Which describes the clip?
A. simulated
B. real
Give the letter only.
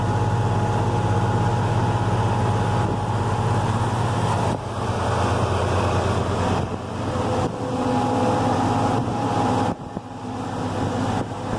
B